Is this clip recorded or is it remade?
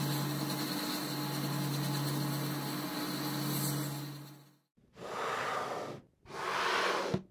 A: recorded